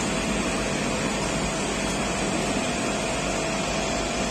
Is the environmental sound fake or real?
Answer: real